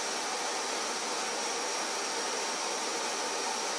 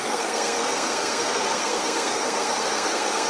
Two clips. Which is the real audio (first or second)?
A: first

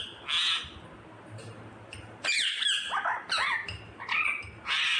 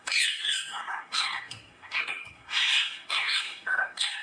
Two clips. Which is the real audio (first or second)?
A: first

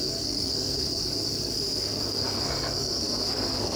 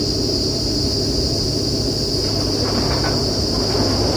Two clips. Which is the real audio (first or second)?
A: second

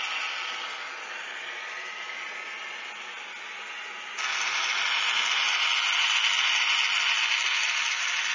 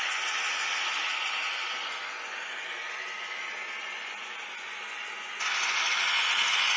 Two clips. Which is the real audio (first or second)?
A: first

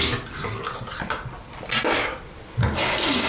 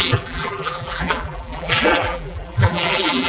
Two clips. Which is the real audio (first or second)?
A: first